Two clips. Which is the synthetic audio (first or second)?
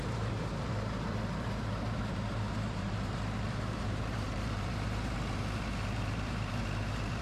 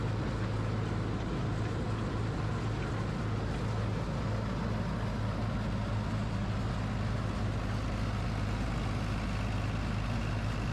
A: first